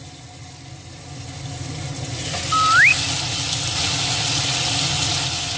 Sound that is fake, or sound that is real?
real